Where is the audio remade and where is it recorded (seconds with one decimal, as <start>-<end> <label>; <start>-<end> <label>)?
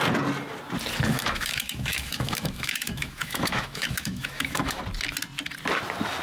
0.0-1.1 recorded; 1.1-4.8 remade; 4.8-6.2 recorded